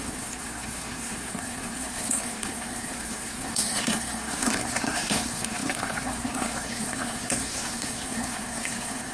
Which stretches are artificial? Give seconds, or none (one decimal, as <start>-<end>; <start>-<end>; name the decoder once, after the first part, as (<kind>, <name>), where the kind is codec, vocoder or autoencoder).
0.0-9.1 (codec, SNAC)